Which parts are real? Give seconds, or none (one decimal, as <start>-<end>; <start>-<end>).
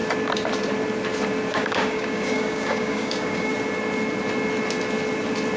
0.0-1.5; 3.5-5.6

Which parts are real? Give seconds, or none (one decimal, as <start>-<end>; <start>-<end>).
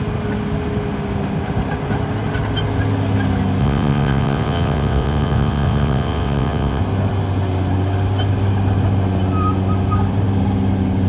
0.0-3.6; 6.8-11.1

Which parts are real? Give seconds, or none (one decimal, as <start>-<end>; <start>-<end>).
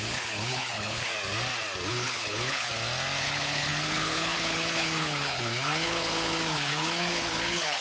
1.1-1.9; 2.7-3.2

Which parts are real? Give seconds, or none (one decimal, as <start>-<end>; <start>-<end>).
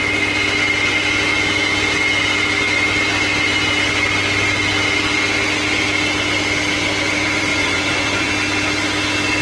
0.0-7.5; 8.3-9.4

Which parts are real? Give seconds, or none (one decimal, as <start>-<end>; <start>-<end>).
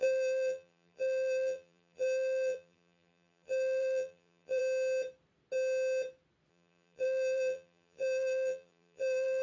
4.6-6.5